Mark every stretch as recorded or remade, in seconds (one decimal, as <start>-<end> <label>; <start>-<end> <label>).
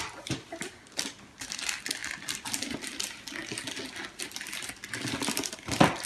0.0-6.1 recorded